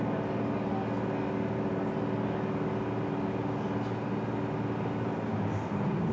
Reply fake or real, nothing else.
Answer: real